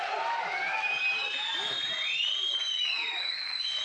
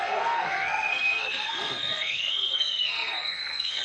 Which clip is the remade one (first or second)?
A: second